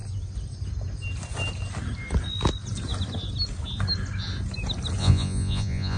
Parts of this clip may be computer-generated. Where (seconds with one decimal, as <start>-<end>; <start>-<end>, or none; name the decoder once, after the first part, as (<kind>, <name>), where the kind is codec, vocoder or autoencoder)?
5.0-6.0 (vocoder, Vocos)